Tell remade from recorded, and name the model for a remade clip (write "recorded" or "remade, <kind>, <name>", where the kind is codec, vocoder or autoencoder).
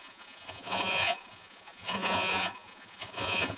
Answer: remade, vocoder, Vocos